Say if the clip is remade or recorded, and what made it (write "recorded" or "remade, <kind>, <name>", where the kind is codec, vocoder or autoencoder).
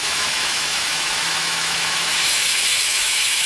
remade, autoencoder, DAC-VAE